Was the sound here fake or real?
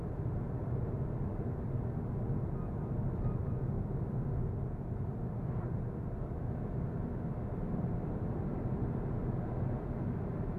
real